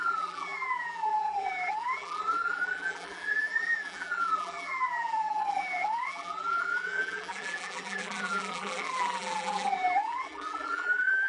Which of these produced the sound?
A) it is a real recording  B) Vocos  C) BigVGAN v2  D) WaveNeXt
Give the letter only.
C